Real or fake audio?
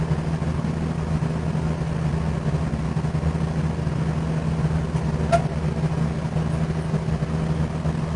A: real